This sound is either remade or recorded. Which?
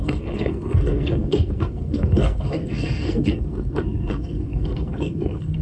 remade